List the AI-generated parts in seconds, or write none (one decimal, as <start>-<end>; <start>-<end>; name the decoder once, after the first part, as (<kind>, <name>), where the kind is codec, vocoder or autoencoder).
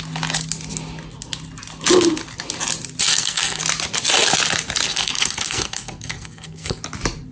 3.0-3.6 (codec, SNAC); 4.9-6.8